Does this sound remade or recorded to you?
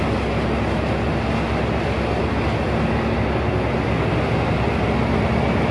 recorded